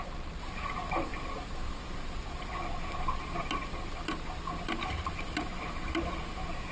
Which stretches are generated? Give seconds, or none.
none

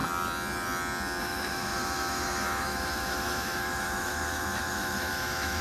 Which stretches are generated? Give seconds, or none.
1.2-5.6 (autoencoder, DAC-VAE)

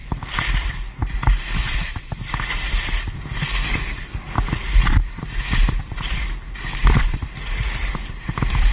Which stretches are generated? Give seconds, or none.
none